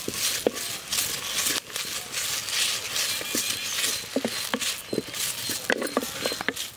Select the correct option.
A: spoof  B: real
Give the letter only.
B